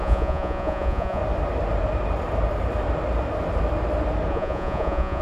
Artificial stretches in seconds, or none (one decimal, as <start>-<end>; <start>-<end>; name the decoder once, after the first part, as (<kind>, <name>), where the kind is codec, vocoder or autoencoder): 0.0-1.2 (vocoder, Vocos); 4.3-5.2